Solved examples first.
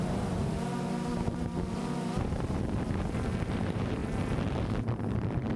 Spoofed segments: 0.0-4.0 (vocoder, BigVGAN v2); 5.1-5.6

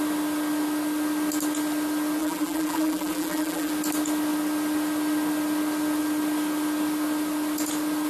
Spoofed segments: 2.2-3.7 (vocoder, BigVGAN v2)

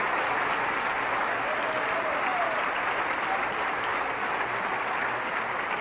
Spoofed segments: 2.3-3.5 (vocoder, BigVGAN v2)

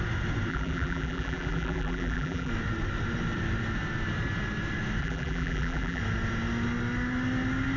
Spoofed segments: 0.5-2.5 (vocoder, BigVGAN v2); 5.0-6.0

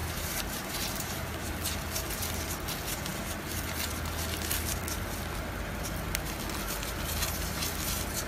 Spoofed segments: 0.0-1.5 (vocoder, BigVGAN v2)

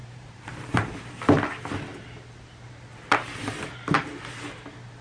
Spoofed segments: 0.0-1.1 (vocoder, BigVGAN v2)

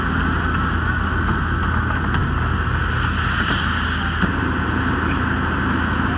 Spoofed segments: none